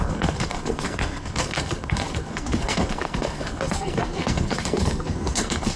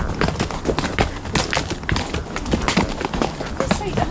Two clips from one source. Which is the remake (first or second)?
first